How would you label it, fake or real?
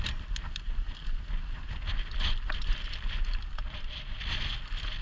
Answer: real